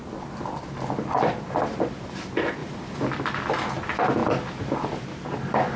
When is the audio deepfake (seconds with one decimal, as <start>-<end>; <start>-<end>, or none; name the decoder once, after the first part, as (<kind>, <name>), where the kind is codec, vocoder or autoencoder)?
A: none